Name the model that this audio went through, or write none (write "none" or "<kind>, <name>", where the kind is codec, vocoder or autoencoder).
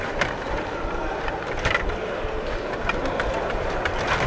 none